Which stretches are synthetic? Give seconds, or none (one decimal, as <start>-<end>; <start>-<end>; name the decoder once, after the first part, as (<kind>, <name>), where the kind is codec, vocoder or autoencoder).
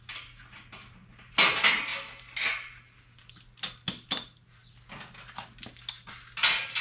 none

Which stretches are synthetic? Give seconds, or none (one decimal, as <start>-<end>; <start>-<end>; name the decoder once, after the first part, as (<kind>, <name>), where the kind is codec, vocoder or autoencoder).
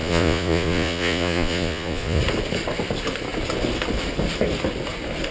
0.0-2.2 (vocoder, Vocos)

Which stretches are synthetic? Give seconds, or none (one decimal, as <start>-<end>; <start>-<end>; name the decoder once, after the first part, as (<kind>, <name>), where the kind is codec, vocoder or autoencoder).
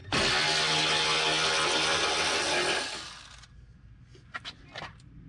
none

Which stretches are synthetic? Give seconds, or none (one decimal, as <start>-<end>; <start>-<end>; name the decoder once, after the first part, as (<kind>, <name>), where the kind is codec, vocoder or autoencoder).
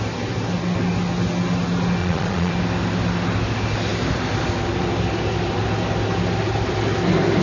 2.0-2.5 (vocoder, Vocos)